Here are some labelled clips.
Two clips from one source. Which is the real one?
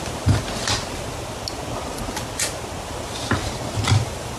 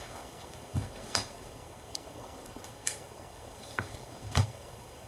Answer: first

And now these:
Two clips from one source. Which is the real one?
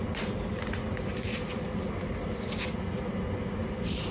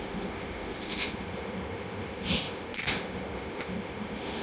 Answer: first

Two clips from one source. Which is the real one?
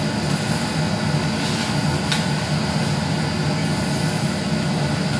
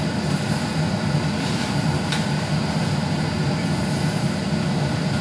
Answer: first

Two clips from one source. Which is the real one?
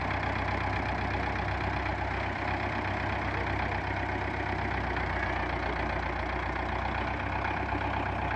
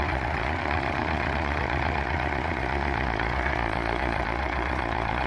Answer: first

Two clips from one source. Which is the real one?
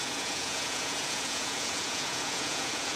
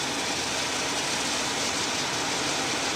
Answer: second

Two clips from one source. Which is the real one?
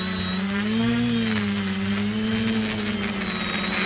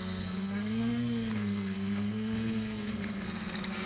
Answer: first